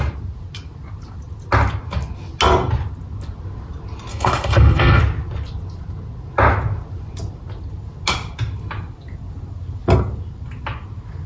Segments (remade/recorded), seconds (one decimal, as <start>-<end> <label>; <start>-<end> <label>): 0.0-4.1 recorded; 4.1-5.0 remade; 5.0-11.3 recorded